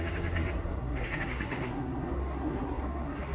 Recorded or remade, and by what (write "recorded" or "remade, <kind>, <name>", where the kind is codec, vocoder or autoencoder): remade, codec, SNAC